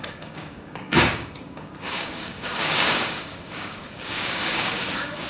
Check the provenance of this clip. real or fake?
fake